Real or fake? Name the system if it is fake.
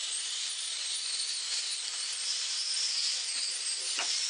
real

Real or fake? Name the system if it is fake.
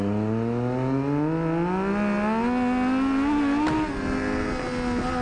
real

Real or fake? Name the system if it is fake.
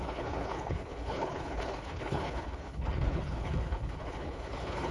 fake, codec, HILCodec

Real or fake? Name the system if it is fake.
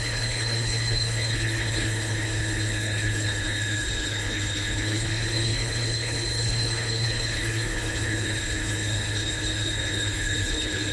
fake, codec, HILCodec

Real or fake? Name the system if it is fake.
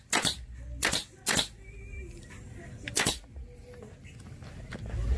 real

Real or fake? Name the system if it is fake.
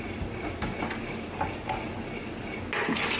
real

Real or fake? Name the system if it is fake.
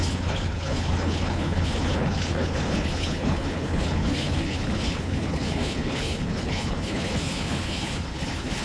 fake, codec, HILCodec